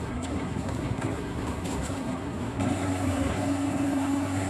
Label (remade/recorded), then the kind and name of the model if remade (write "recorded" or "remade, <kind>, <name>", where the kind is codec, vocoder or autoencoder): remade, codec, SNAC